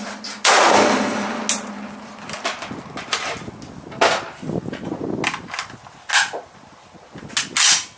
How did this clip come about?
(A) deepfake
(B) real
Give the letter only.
B